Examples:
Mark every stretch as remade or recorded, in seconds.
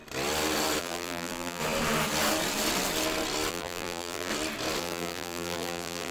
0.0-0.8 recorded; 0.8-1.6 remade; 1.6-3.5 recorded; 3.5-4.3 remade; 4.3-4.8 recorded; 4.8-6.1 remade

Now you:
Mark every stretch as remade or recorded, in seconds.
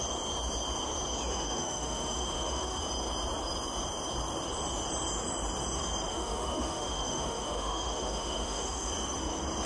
0.0-1.3 recorded; 1.3-2.8 remade; 2.8-6.1 recorded; 6.1-8.9 remade; 8.9-9.7 recorded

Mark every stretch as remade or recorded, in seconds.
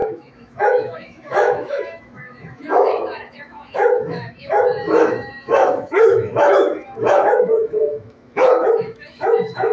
0.0-9.7 remade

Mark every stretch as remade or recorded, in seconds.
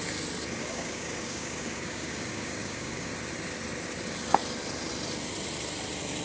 0.0-0.6 recorded; 0.6-3.1 remade; 3.1-6.2 recorded